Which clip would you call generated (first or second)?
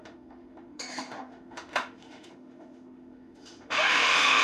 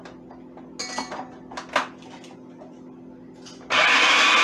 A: first